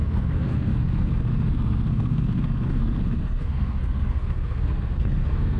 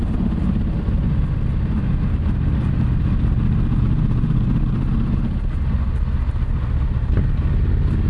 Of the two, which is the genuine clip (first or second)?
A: second